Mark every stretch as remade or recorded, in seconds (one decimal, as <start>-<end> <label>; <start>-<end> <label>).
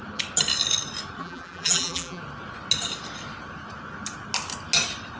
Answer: 0.0-1.2 recorded; 1.2-2.2 remade; 2.2-5.2 recorded